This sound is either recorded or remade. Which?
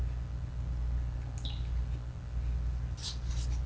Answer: recorded